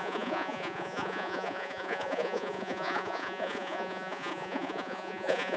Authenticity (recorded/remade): remade